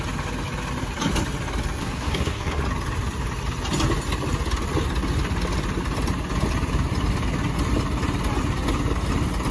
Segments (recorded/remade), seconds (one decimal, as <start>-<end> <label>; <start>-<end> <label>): 0.0-1.8 recorded; 1.8-2.6 remade; 2.6-9.5 recorded